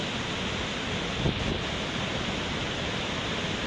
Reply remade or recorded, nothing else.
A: recorded